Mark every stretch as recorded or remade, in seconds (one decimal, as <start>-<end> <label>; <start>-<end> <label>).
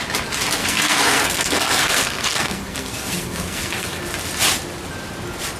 0.0-0.6 recorded; 0.6-4.0 remade; 4.0-5.6 recorded